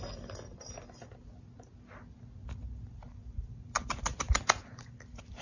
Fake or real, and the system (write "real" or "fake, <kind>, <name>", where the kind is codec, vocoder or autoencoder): real